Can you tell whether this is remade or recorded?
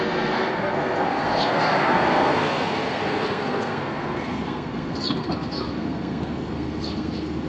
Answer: remade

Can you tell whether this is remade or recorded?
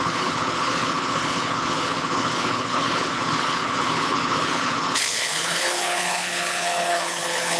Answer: remade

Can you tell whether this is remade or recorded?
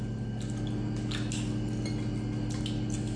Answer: recorded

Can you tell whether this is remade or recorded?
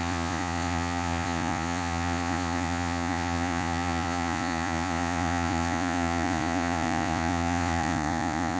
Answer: remade